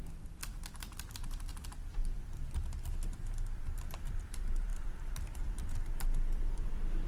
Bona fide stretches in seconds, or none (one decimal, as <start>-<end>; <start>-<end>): 1.5-3.6